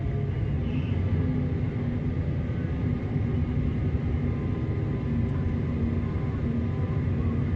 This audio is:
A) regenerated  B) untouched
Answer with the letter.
B